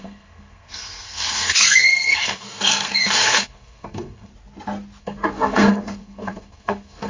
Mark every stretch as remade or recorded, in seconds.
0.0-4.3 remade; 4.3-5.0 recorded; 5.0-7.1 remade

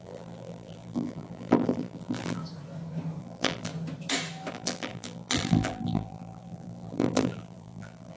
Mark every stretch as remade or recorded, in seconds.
0.0-2.4 remade; 2.4-3.2 recorded; 3.2-3.7 remade; 3.7-4.5 recorded; 4.5-8.2 remade

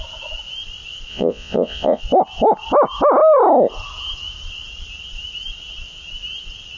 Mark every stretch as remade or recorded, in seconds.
0.0-1.1 recorded; 1.1-2.0 remade; 2.0-6.8 recorded

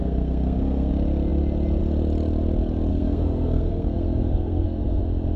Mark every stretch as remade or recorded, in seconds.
0.0-0.9 remade; 0.9-2.9 recorded; 2.9-5.0 remade; 5.0-5.4 recorded